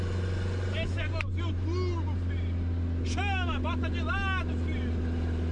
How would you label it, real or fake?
real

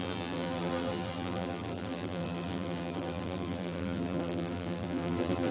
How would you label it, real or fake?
fake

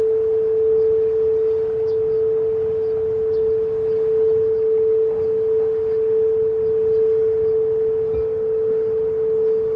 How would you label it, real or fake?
real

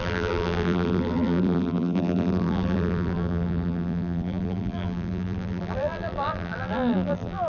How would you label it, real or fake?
fake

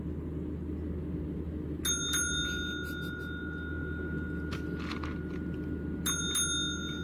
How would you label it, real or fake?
real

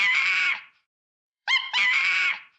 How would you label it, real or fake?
fake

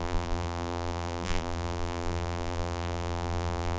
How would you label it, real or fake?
fake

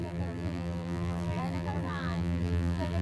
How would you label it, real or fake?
fake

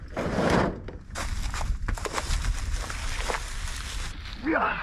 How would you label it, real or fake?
real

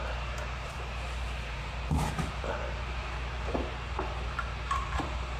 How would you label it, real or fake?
fake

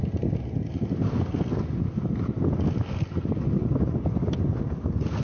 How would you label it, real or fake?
real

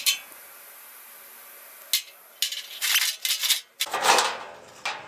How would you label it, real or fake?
real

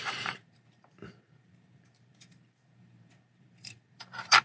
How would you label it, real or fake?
fake